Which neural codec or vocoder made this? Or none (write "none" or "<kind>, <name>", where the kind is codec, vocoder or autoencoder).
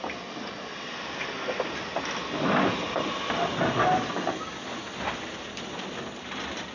none